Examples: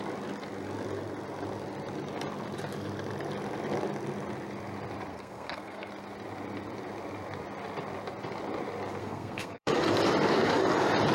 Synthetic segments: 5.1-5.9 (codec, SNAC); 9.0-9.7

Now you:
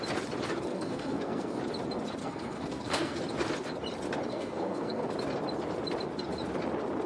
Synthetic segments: 0.7-1.6 (codec, SNAC); 2.2-3.2; 4.3-5.1